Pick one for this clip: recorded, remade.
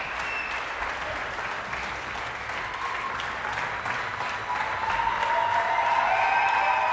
recorded